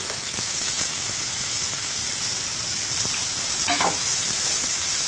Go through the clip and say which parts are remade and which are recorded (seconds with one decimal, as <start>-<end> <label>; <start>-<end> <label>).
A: 0.0-2.0 remade; 2.0-3.4 recorded; 3.4-5.1 remade